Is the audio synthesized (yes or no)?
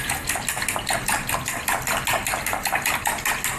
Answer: no